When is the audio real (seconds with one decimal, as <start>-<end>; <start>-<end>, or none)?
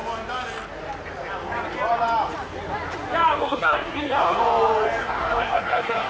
0.0-3.4; 4.4-5.0